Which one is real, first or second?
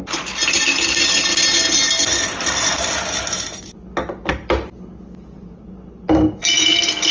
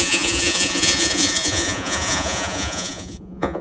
first